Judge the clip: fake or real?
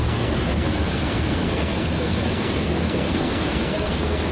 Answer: fake